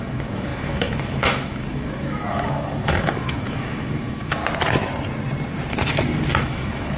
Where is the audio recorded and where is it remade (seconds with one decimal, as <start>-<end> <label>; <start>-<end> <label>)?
0.0-4.4 remade; 4.4-6.4 recorded; 6.4-7.0 remade